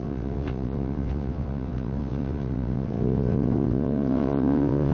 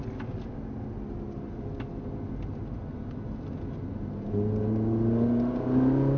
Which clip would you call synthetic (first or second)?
first